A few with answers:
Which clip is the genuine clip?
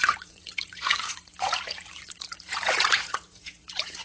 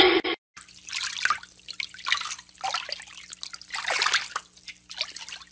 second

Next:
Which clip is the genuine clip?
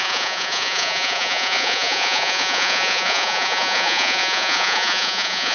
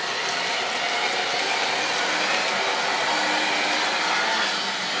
second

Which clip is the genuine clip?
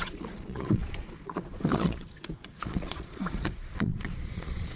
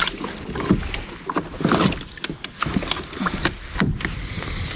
second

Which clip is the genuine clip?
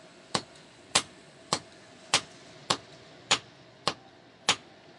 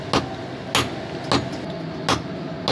second